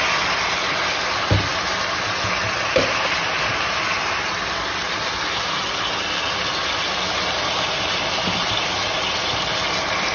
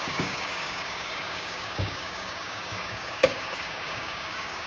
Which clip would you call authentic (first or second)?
first